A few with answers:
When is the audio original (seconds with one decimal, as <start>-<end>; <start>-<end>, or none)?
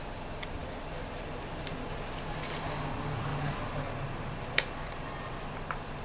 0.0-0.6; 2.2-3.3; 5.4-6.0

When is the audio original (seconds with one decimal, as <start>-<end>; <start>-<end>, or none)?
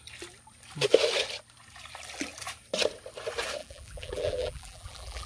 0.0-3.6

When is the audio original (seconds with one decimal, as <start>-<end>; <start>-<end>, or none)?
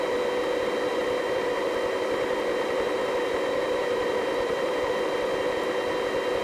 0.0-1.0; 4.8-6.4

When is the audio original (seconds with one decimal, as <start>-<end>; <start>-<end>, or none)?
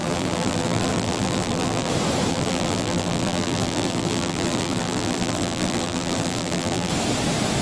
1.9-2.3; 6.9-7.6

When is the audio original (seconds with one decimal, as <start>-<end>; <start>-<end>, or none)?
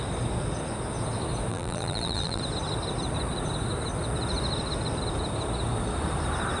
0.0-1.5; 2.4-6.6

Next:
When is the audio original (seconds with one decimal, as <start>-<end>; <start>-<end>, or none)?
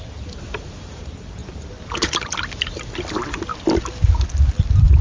0.0-1.4; 2.8-3.5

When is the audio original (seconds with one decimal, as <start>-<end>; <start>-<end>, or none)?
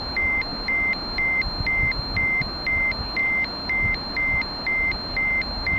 0.0-5.8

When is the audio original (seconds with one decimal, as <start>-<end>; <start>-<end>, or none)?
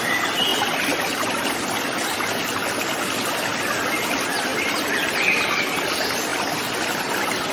0.0-0.5; 3.0-4.5; 5.4-6.3; 7.0-7.5